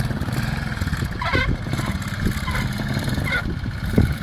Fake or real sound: real